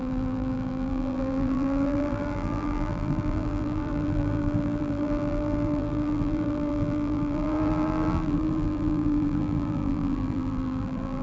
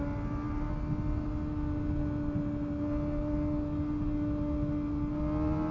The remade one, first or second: first